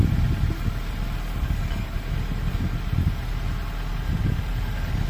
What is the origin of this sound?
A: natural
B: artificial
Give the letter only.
A